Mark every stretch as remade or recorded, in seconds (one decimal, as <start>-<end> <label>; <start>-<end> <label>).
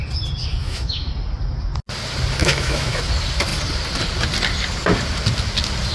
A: 0.0-0.6 recorded; 0.6-1.1 remade; 1.1-2.4 recorded; 2.4-3.0 remade; 3.0-5.9 recorded